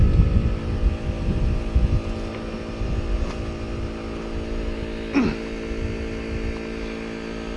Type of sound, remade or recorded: recorded